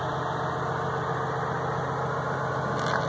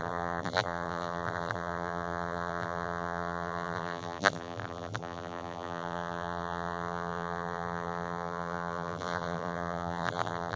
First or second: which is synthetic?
second